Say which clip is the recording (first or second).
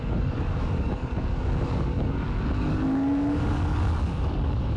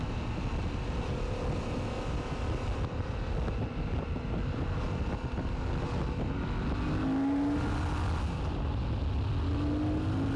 second